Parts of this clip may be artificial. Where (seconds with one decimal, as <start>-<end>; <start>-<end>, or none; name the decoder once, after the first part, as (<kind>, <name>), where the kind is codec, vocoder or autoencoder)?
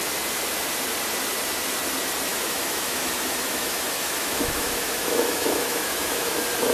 2.3-6.3 (autoencoder, DAC-VAE)